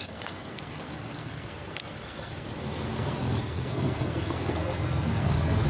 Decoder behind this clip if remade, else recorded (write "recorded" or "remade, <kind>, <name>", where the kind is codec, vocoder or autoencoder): remade, codec, SNAC